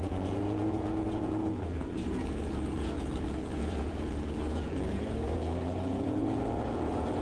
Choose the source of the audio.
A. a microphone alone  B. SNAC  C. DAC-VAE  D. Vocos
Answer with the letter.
D